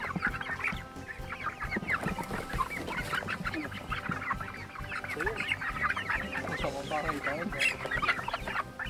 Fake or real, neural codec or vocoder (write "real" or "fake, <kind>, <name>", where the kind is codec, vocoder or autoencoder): real